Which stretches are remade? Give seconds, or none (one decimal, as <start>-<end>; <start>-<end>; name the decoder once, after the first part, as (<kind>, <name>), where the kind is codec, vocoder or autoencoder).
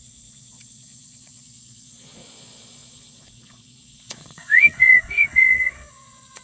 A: 0.0-6.4 (vocoder, Vocos)